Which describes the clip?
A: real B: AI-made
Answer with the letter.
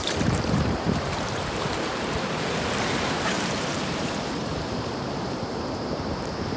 B